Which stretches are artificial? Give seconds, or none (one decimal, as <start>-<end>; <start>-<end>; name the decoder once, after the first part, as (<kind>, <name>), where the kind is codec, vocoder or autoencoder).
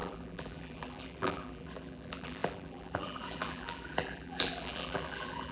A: 0.0-5.5 (vocoder, BigVGAN v2)